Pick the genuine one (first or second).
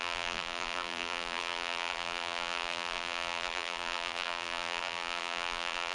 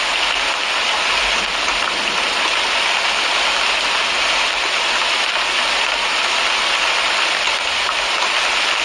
second